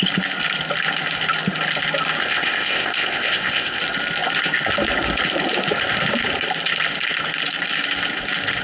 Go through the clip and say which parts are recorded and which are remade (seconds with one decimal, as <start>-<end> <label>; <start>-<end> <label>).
0.0-2.2 recorded; 2.2-3.8 remade; 3.8-8.6 recorded